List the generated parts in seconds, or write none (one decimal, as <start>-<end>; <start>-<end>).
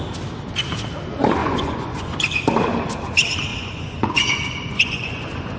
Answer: 1.4-2.2; 3.5-5.6